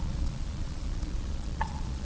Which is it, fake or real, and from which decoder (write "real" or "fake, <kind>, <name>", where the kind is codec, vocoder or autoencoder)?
fake, vocoder, Vocos